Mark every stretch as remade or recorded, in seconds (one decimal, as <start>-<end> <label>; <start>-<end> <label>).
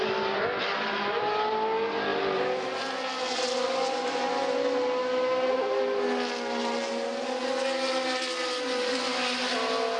0.0-10.0 recorded